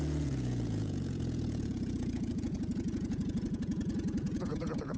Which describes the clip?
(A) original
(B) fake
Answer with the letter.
B